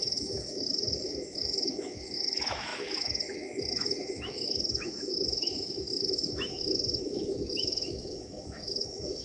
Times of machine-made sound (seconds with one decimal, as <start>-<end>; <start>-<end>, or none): 0.0-9.2